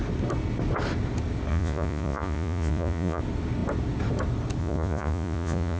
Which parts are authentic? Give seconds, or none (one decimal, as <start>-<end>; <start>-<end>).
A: 0.0-1.5; 3.2-4.6